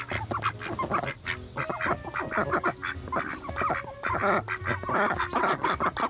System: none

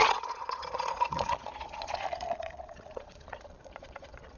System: vocoder, Vocos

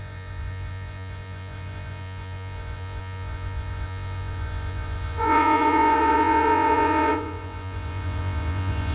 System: vocoder, Vocos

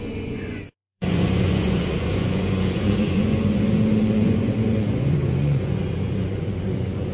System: vocoder, Vocos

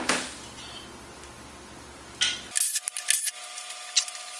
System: none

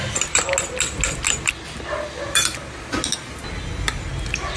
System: none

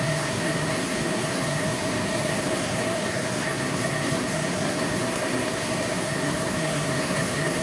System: codec, SNAC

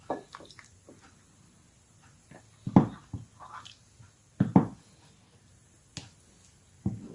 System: none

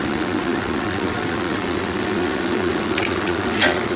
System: vocoder, WaveNeXt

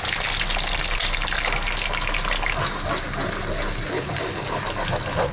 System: none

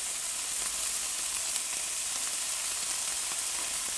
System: none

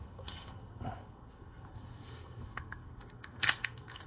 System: codec, SNAC